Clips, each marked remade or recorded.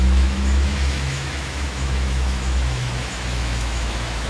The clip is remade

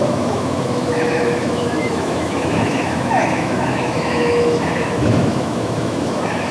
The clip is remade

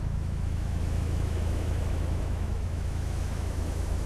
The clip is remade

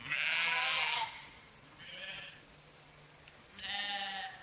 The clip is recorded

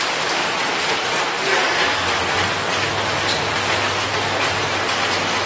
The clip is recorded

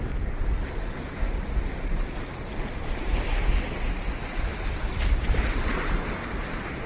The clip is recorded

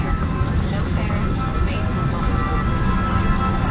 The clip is recorded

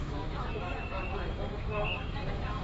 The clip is remade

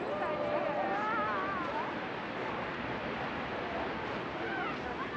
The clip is recorded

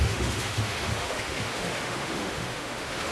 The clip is remade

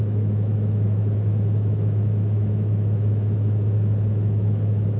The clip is remade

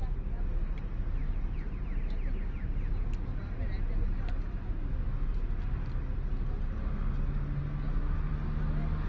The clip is recorded